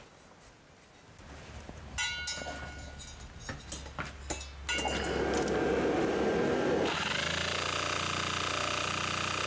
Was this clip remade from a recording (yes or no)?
no